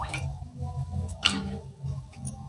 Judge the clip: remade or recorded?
remade